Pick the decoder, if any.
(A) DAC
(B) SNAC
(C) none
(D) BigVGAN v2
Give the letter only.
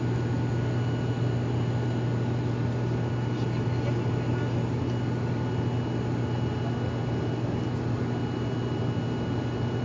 C